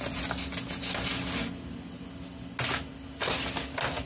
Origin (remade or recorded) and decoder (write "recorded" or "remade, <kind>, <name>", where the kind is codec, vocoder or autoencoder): recorded